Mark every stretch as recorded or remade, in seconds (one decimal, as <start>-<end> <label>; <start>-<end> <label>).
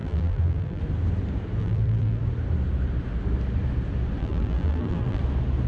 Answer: 0.0-0.8 remade; 0.8-1.6 recorded; 1.6-2.2 remade; 2.2-4.2 recorded; 4.2-5.2 remade; 5.2-5.7 recorded